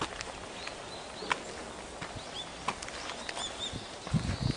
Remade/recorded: recorded